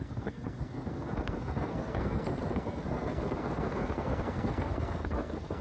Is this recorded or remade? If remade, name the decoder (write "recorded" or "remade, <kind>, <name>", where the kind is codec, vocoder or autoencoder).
remade, codec, SNAC